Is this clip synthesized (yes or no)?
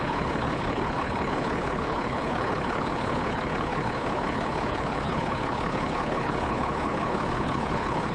yes